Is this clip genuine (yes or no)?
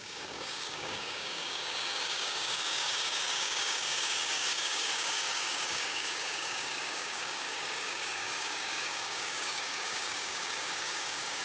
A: no